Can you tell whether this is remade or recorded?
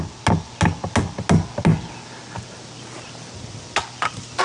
recorded